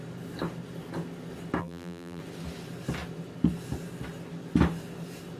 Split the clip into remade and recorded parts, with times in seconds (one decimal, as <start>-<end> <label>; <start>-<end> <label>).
0.0-1.6 recorded; 1.6-2.2 remade; 2.2-5.4 recorded